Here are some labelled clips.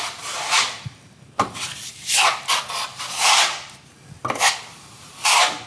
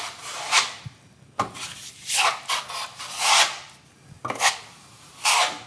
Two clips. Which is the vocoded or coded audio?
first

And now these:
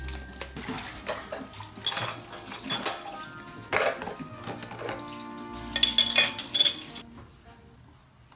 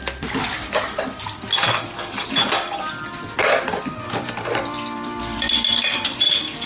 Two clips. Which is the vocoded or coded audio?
second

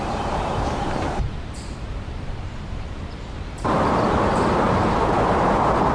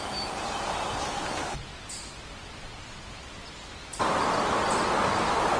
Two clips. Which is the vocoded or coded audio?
first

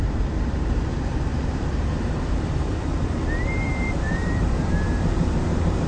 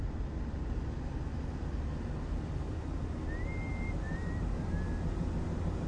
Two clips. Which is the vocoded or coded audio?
first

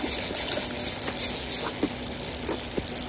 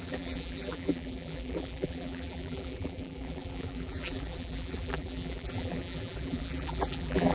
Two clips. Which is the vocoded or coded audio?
second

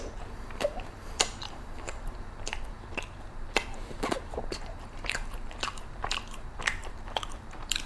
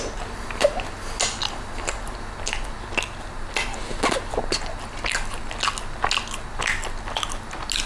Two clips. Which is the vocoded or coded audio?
first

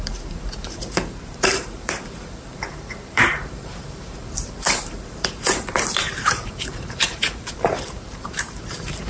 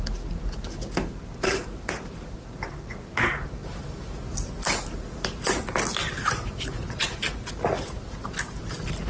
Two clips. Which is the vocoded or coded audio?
first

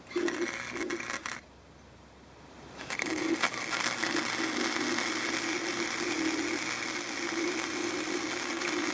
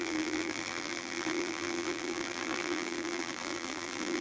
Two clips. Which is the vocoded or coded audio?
second